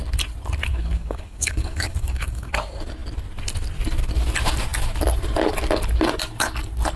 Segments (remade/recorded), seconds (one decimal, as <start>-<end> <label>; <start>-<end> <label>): 0.0-0.7 recorded; 0.7-2.5 remade; 2.5-7.0 recorded